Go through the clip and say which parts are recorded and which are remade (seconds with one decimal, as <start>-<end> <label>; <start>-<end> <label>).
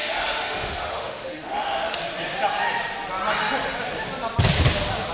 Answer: 0.0-2.0 remade; 2.0-5.1 recorded